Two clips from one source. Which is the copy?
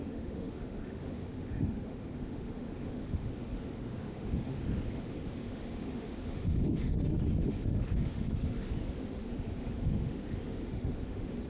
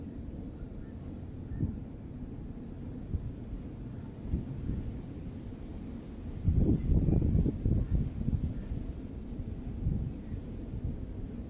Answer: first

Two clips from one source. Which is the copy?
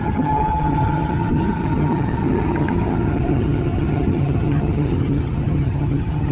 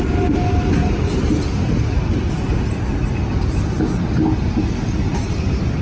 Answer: first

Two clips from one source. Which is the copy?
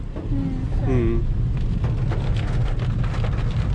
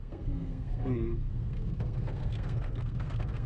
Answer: second